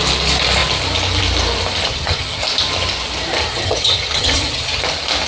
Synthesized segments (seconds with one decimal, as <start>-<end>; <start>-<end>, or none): 1.9-2.4; 3.4-4.8